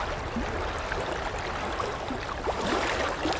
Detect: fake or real real